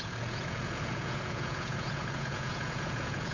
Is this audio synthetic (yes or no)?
yes